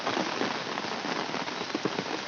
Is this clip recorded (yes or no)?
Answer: yes